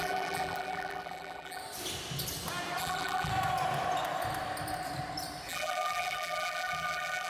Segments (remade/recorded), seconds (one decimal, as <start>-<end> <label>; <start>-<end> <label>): 0.0-1.6 remade; 1.6-2.8 recorded; 2.8-3.3 remade; 3.3-5.5 recorded; 5.5-7.3 remade